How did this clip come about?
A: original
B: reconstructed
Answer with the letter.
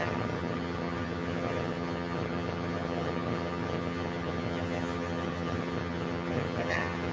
B